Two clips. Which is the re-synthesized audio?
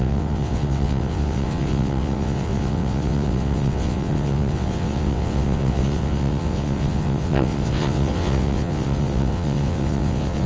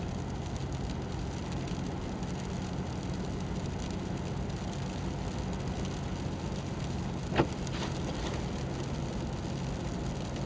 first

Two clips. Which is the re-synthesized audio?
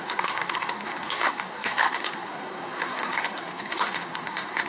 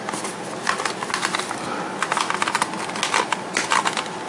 first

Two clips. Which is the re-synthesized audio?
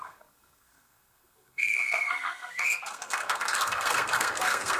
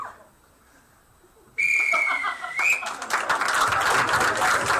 first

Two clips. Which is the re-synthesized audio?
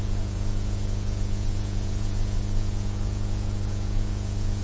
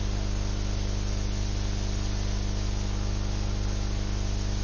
first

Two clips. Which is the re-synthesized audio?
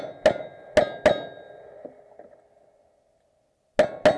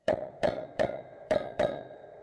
second